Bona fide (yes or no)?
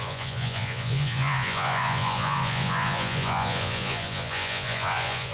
no